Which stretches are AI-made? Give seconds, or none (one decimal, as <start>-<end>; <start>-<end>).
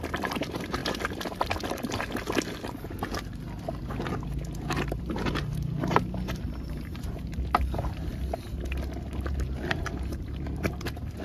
0.0-0.8; 5.0-8.1; 9.3-11.2